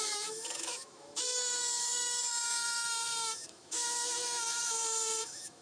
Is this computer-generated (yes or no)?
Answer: yes